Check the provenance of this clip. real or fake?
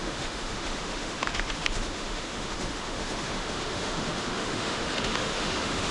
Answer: fake